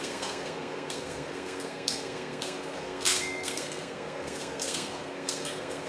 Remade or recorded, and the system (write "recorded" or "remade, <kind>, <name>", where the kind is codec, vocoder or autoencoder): remade, codec, SNAC